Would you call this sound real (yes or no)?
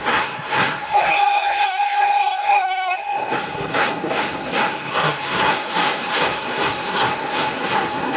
no